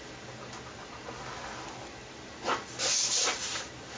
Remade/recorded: recorded